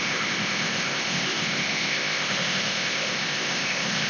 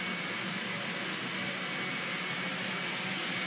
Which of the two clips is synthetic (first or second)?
first